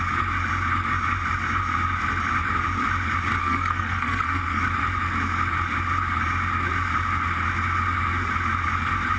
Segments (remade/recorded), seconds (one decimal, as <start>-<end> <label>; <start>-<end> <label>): 0.0-3.4 recorded; 3.4-4.6 remade; 4.6-9.2 recorded